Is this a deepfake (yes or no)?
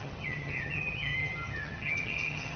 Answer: yes